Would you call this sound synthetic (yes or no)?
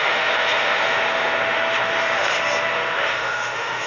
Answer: yes